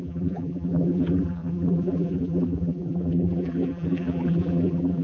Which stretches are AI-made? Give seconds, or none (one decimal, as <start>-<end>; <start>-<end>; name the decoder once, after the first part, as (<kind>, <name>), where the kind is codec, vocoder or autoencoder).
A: 0.0-5.0 (vocoder, BigVGAN v2)